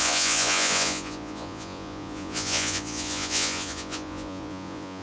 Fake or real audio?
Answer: fake